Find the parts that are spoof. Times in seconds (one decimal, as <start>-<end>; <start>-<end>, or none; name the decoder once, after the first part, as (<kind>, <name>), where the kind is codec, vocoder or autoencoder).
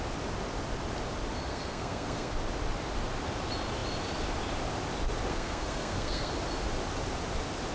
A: 1.5-2.3 (codec, SNAC); 5.3-6.3